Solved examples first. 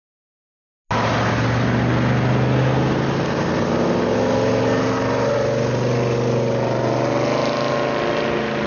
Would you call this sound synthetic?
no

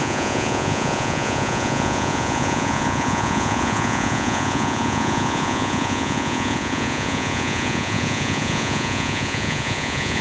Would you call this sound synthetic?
yes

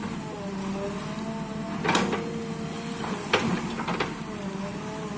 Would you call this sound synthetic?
no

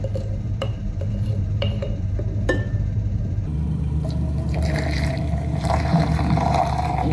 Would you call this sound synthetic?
yes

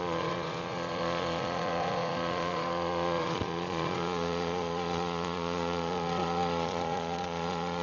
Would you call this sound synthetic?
yes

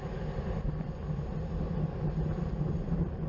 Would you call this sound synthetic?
no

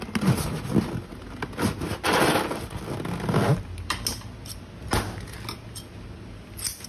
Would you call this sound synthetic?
no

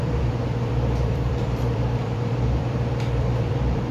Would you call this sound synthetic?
yes